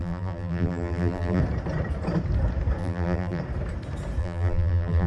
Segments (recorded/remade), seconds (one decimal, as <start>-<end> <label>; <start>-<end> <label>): 0.0-1.4 remade; 1.4-2.8 recorded; 2.8-3.4 remade; 3.4-4.2 recorded; 4.2-5.1 remade